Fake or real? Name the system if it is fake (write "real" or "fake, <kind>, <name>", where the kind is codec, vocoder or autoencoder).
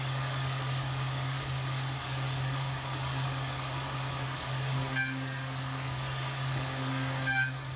fake, codec, DAC